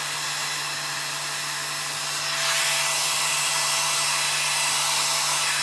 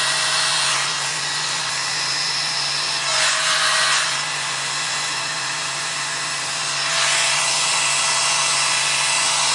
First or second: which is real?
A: first